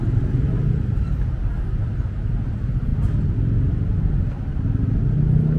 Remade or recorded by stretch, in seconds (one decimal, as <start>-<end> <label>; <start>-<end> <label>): 0.0-5.6 recorded